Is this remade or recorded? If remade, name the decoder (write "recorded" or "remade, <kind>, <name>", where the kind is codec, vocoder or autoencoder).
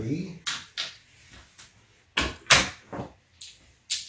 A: recorded